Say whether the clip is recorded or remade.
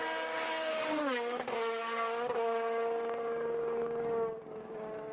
remade